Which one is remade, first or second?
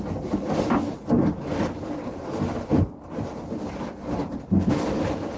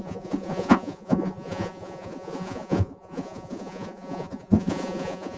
second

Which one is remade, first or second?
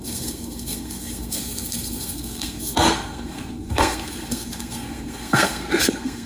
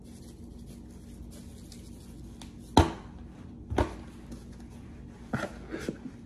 first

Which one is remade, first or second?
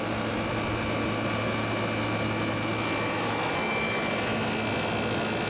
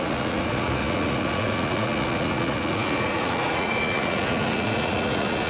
second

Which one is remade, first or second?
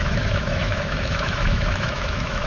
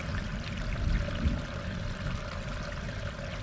first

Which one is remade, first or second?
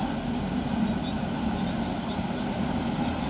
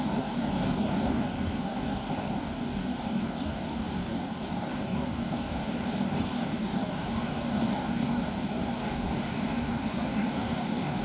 second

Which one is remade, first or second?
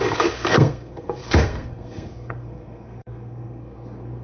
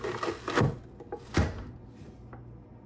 first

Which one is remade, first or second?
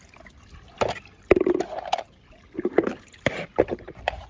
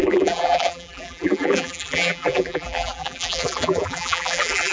second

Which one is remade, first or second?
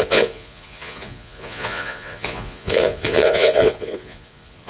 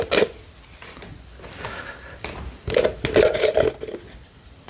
first